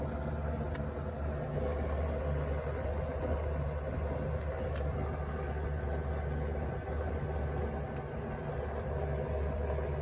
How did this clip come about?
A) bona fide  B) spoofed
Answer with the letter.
A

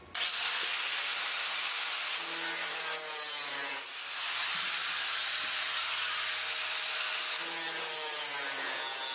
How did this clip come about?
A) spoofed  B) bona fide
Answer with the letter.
B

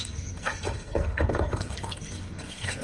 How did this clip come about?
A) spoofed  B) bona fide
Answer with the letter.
A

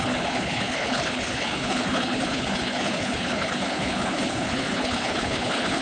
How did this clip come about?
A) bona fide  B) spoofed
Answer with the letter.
B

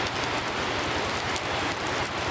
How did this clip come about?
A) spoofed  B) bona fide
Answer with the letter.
B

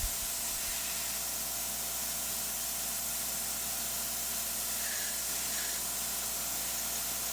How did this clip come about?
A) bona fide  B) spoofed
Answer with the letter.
A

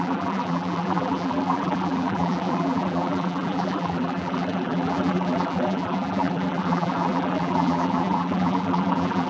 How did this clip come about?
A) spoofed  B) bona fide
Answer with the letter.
A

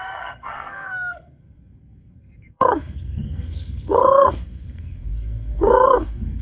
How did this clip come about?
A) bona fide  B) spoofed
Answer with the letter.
B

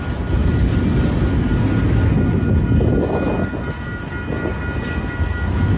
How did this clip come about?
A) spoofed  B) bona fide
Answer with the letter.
B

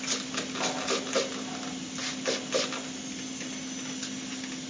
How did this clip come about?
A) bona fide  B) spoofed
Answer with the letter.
A